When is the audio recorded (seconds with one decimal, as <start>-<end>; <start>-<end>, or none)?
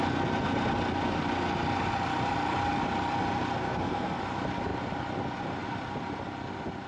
0.0-3.6; 4.2-6.9